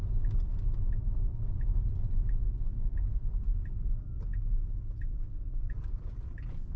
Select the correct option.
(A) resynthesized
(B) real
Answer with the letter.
B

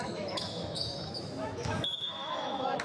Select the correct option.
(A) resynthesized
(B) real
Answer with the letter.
A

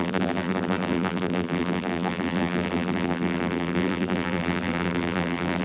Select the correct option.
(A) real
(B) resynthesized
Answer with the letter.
B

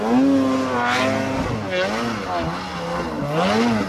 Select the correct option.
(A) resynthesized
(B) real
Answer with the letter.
B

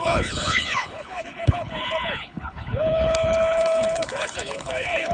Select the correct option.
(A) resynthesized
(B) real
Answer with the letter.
A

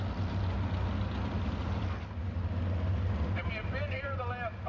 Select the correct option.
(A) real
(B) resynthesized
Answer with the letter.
A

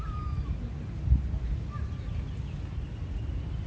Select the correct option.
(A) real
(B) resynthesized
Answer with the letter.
A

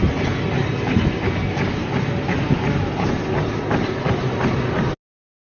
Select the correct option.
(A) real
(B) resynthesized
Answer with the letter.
A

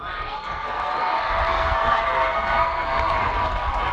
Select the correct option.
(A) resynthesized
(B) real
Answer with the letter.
A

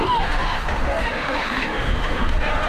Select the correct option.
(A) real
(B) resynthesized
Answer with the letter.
B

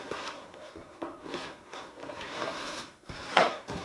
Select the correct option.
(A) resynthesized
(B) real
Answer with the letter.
A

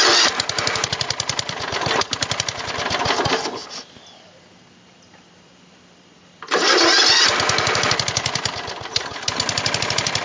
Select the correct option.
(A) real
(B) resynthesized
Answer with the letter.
A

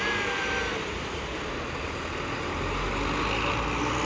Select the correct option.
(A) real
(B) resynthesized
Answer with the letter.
A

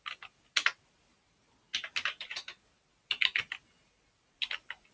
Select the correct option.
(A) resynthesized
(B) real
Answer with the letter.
B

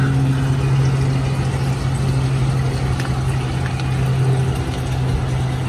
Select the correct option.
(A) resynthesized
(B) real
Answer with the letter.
B